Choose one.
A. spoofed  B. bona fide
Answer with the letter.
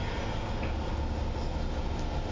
B